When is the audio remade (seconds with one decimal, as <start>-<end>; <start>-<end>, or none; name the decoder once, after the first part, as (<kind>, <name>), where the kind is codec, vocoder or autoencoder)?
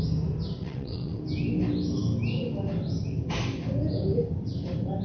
0.6-1.2 (vocoder, WaveNeXt)